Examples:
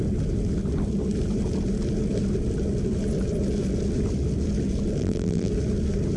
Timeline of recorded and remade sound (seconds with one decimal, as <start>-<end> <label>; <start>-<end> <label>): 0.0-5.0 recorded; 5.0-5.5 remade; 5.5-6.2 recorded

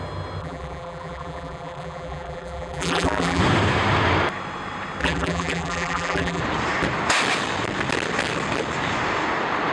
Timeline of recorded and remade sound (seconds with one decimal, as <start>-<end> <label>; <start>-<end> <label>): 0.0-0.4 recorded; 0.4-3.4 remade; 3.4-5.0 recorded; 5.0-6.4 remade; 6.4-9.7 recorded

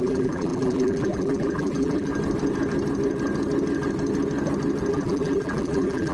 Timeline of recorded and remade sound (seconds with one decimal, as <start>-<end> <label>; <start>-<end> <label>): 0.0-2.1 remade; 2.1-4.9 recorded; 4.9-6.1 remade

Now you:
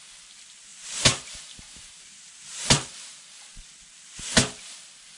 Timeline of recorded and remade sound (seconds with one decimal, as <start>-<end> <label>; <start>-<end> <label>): 0.0-0.7 recorded; 0.7-3.4 remade; 3.4-5.2 recorded

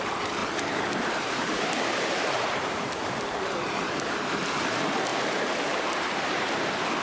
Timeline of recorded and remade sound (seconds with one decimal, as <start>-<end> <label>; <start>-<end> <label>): 0.0-0.4 recorded; 0.4-4.6 remade; 4.6-5.1 recorded; 5.1-6.4 remade; 6.4-7.0 recorded

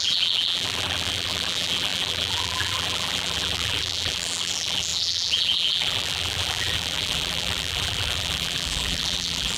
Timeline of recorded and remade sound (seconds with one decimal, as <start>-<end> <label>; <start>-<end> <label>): 0.0-9.6 remade